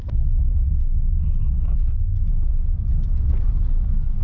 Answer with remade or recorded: recorded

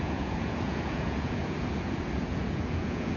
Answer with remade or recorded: remade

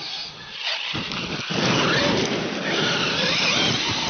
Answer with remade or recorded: recorded